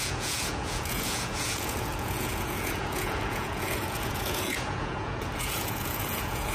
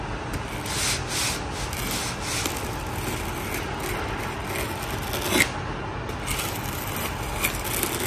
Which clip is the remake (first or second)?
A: first